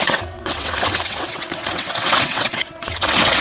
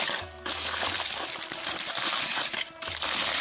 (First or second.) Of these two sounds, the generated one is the first